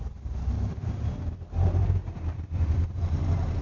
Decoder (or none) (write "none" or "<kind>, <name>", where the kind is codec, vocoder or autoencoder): vocoder, BigVGAN v2